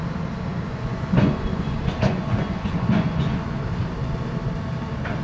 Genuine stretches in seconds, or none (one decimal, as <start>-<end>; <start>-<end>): 0.0-0.5; 3.6-5.2